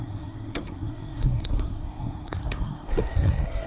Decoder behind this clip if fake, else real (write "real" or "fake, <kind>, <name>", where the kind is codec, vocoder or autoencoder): fake, codec, SNAC